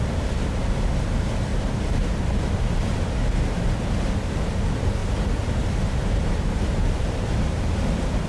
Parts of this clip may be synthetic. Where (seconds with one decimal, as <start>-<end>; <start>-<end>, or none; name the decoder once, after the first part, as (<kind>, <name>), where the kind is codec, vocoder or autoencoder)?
1.5-3.2 (vocoder, BigVGAN v2); 5.0-7.6